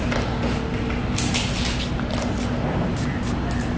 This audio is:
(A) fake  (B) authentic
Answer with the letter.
B